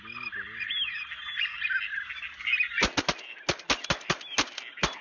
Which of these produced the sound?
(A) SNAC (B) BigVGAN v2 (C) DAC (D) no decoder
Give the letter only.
D